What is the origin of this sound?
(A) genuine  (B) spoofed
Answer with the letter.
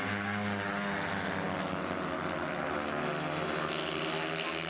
A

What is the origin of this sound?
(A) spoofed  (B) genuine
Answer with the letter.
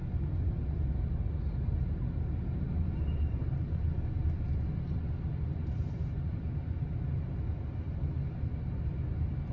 B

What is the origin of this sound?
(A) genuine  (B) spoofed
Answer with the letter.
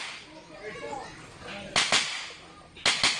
A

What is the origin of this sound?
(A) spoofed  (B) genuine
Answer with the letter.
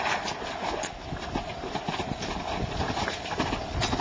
B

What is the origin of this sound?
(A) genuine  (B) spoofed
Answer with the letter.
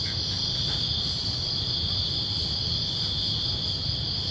A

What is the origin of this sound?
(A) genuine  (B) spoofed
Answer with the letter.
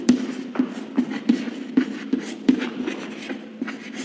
B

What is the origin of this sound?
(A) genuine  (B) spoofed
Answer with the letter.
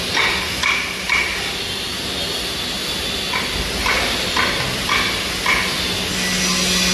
A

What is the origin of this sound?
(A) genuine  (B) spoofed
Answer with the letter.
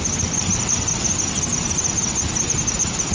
A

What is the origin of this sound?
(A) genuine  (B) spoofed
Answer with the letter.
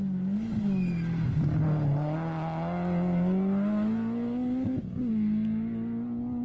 A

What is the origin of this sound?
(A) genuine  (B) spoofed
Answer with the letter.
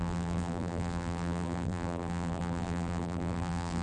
B